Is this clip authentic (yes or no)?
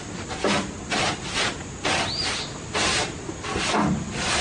yes